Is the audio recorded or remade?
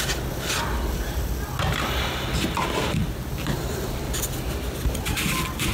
recorded